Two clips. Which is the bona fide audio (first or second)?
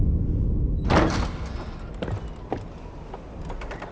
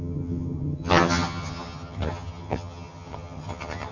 first